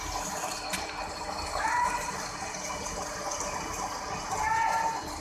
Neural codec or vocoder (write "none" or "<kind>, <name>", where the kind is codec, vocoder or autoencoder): vocoder, BigVGAN v2